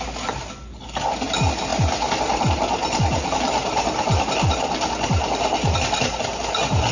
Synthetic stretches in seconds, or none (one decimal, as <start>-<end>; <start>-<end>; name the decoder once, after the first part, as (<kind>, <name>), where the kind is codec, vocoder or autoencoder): none